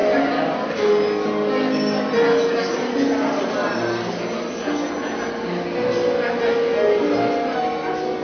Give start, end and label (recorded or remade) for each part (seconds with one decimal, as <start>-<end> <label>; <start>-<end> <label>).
0.0-8.2 recorded